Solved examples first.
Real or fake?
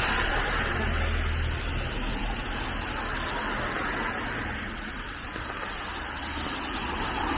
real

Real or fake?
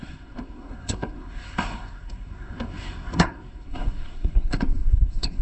fake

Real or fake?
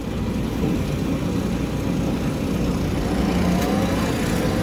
real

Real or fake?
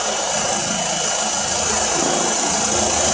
real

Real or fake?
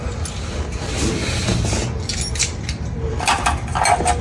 real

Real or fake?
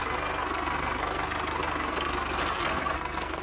fake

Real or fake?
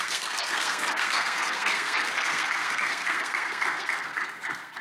fake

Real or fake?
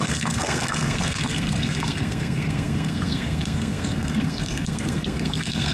fake